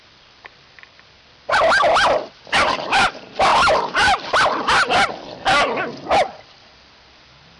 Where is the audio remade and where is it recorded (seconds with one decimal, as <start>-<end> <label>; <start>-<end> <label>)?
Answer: 0.0-7.6 recorded